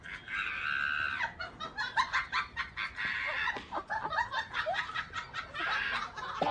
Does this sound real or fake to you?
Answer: real